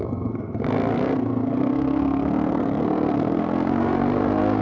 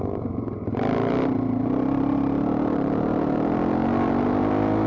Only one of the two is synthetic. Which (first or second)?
first